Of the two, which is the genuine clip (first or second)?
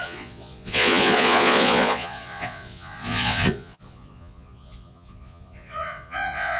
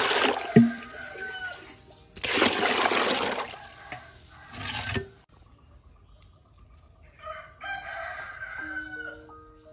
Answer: second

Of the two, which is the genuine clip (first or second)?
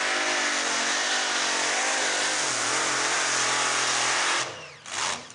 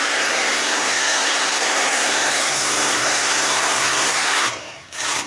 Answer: first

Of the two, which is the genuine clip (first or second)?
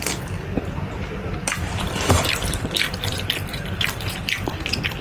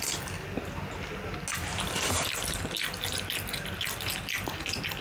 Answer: second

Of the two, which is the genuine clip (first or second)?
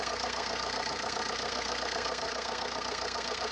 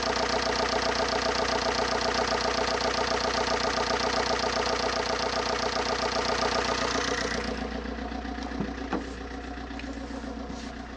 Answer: second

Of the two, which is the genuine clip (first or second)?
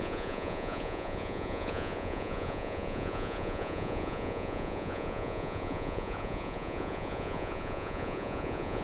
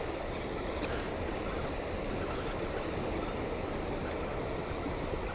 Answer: second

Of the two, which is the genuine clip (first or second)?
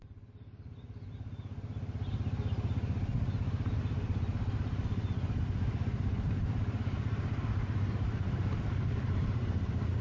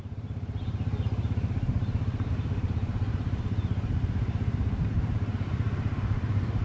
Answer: first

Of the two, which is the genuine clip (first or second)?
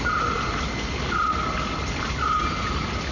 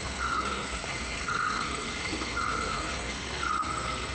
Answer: first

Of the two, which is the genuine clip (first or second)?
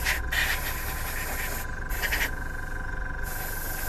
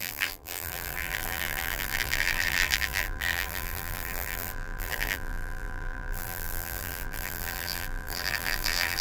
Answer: first